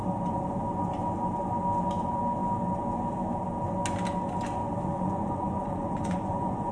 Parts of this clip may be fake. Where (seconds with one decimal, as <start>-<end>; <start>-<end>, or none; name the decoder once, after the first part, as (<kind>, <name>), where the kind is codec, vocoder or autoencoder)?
4.9-6.7 (vocoder, Vocos)